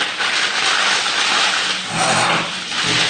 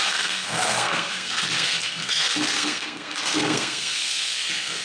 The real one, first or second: first